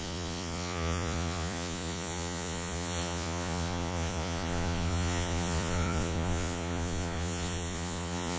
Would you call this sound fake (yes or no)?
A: yes